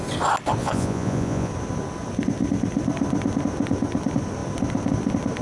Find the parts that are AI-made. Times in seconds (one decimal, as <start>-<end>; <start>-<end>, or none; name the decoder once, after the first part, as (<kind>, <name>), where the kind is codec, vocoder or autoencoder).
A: 0.6-1.5 (vocoder, Vocos)